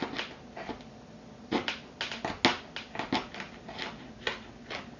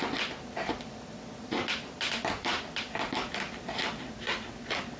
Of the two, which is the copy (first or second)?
second